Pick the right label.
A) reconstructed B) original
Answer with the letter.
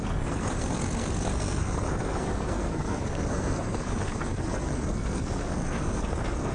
A